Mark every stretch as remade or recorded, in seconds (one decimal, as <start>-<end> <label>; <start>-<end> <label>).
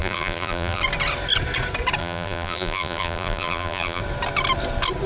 0.0-0.8 remade; 0.8-2.0 recorded; 2.0-4.0 remade; 4.0-5.1 recorded